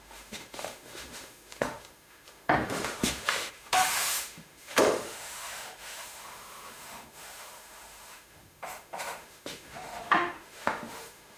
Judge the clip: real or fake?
fake